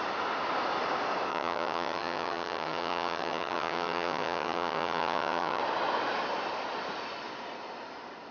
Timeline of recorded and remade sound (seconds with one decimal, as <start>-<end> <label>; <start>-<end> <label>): 0.0-1.3 recorded; 1.3-5.6 remade; 5.6-8.3 recorded